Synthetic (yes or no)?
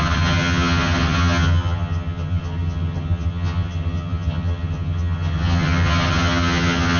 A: yes